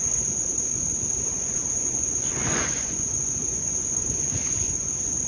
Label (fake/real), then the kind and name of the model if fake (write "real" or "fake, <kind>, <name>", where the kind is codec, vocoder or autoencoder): fake, vocoder, Vocos